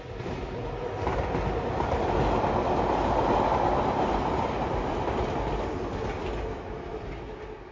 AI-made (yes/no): no